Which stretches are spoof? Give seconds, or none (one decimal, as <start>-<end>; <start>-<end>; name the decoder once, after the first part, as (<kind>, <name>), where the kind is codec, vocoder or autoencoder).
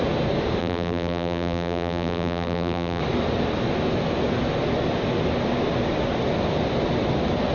0.6-3.0 (vocoder, BigVGAN v2)